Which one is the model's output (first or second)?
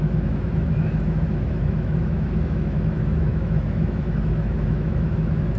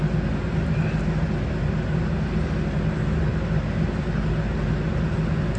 first